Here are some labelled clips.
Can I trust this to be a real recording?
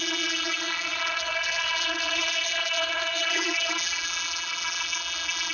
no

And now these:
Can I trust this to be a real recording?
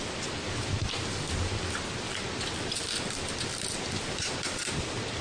no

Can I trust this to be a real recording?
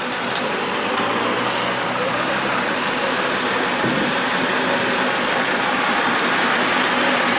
no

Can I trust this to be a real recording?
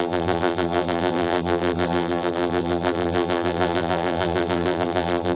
no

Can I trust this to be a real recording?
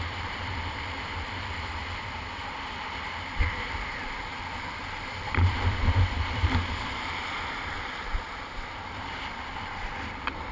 no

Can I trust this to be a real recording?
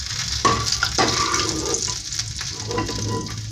yes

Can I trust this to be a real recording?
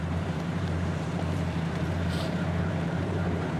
no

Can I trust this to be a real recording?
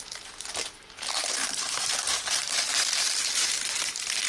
no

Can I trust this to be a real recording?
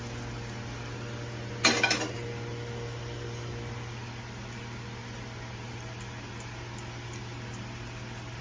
yes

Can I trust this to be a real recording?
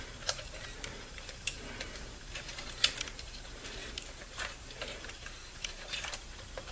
no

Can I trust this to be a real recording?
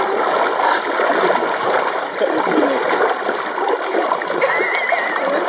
yes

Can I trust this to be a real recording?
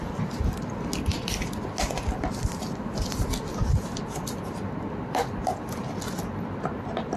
yes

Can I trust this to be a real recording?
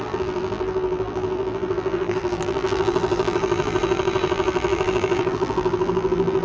no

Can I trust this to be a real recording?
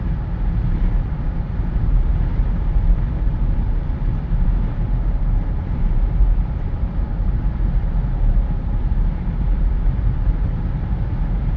no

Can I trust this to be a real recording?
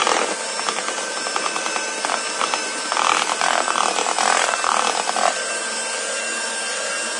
yes